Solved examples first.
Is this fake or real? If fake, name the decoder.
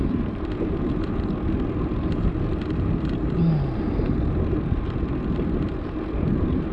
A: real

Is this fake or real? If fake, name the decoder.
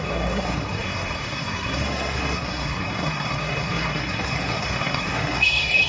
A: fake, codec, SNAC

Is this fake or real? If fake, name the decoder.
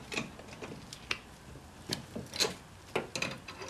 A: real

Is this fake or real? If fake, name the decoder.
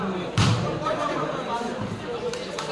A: fake, vocoder, BigVGAN v2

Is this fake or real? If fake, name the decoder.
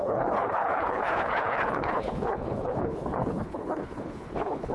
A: fake, codec, HILCodec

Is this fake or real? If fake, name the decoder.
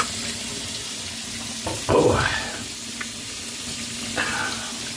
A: real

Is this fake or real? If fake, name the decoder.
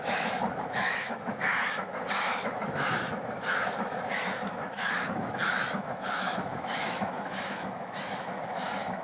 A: fake, autoencoder, DAC-VAE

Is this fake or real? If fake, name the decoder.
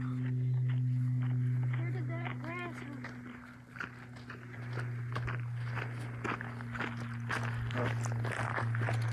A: real